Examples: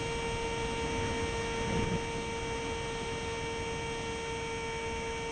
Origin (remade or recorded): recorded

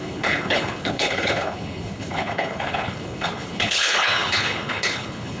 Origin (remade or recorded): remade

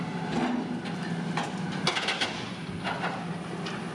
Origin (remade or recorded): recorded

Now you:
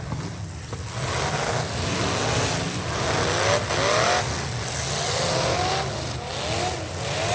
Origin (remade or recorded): recorded